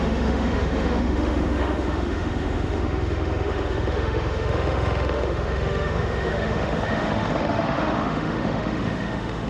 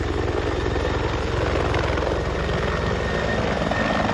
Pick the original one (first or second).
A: second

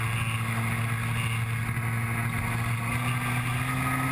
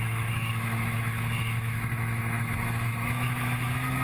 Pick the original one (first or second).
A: first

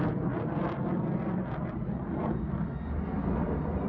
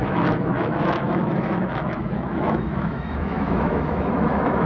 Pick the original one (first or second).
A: first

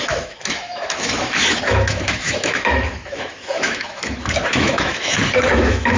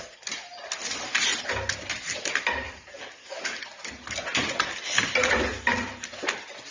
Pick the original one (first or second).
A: second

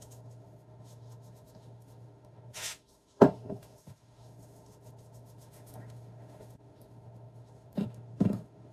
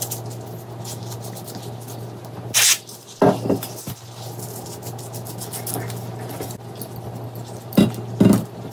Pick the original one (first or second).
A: second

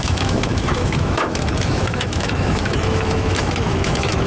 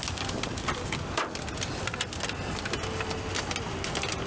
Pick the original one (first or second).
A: second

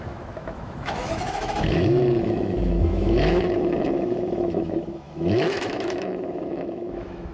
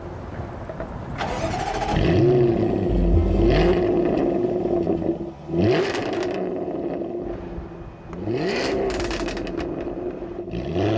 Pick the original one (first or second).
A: second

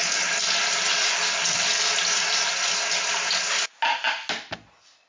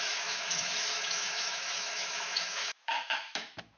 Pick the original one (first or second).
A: first